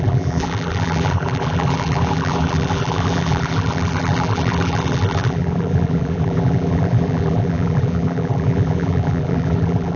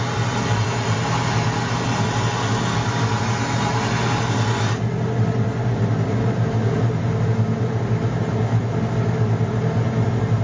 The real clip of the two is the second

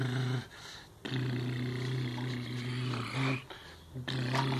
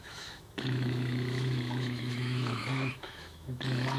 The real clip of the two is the first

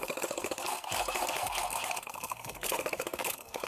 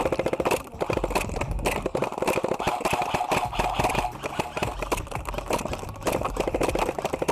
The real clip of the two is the second